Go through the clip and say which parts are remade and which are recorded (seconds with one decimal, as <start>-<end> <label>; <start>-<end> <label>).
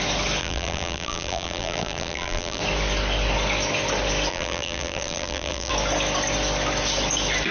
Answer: 0.0-0.4 recorded; 0.4-2.6 remade; 2.6-4.3 recorded; 4.3-5.7 remade; 5.7-7.5 recorded